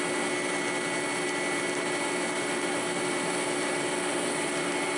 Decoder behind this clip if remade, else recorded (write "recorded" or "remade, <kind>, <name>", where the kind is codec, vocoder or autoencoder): recorded